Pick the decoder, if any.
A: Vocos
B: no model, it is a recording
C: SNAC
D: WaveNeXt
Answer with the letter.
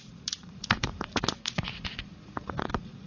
A